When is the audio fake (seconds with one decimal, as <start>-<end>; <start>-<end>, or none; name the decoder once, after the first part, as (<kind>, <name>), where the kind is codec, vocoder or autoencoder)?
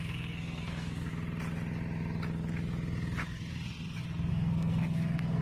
0.0-1.1 (codec, SNAC); 4.3-5.4